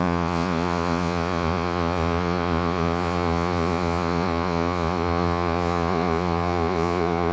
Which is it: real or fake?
fake